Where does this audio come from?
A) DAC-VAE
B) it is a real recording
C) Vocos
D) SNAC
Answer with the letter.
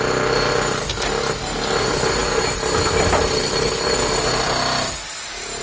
B